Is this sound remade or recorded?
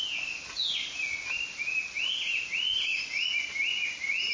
recorded